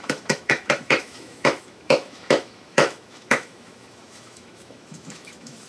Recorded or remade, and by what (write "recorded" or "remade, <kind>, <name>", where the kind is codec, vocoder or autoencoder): remade, autoencoder, DAC-VAE